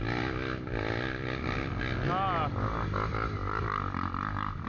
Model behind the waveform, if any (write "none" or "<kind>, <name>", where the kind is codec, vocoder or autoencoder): none